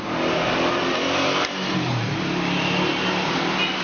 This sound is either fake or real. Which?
real